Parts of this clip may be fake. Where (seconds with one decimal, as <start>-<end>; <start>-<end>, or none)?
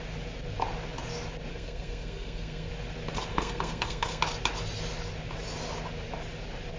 1.5-2.7; 3.3-4.2